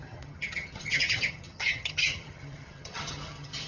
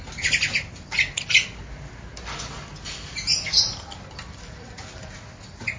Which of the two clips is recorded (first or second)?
second